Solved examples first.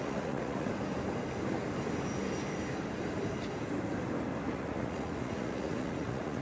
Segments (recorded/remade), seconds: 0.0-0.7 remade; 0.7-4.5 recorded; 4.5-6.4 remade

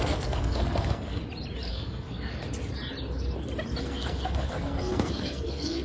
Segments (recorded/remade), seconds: 0.0-1.2 remade; 1.2-1.7 recorded; 1.7-2.4 remade; 2.4-3.8 recorded; 3.8-5.8 remade

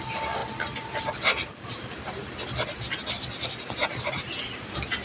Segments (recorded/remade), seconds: 0.0-1.5 recorded; 1.5-2.2 remade; 2.2-5.0 recorded